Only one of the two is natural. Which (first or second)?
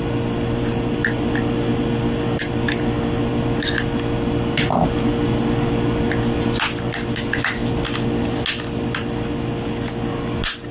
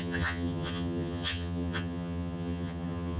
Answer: first